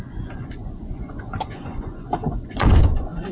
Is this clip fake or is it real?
fake